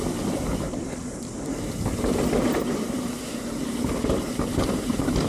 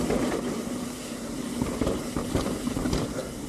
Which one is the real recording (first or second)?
second